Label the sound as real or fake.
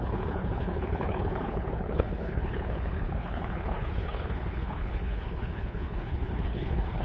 fake